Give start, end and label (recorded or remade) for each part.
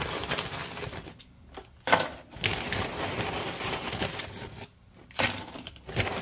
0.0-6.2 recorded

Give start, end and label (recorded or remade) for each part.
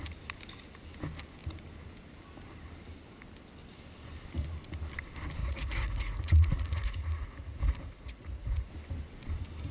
0.0-5.4 recorded; 5.4-8.7 remade; 8.7-9.7 recorded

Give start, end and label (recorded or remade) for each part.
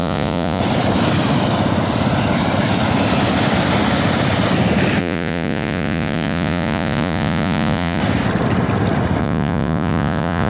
0.0-0.6 remade; 0.6-5.0 recorded; 5.0-8.0 remade; 8.0-9.2 recorded; 9.2-10.5 remade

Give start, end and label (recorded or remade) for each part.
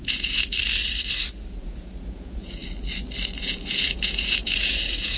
0.0-0.6 remade; 0.6-1.6 recorded; 1.6-2.6 remade; 2.6-3.4 recorded; 3.4-5.2 remade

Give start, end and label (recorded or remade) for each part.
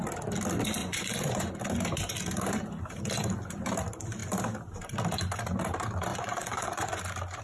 0.0-0.8 recorded; 0.8-1.5 remade; 1.5-6.1 recorded; 6.1-7.0 remade; 7.0-7.4 recorded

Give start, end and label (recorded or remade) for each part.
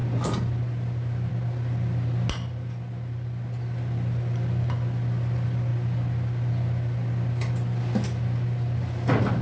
0.0-9.4 recorded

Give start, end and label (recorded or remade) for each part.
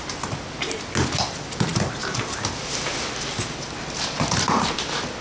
0.0-5.2 recorded